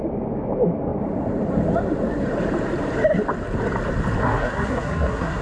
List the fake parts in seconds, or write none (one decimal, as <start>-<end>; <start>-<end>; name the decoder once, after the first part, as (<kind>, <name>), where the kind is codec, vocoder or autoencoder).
4.2-5.4 (codec, SNAC)